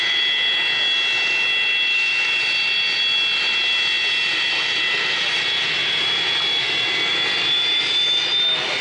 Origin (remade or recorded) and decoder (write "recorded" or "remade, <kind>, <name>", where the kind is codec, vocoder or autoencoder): recorded